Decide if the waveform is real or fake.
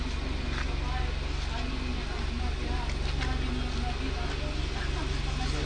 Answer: real